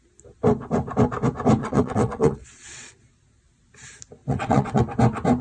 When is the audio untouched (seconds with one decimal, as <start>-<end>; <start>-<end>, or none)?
0.0-1.6; 2.9-4.2; 4.8-5.4